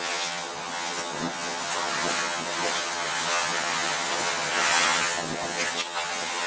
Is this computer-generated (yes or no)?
yes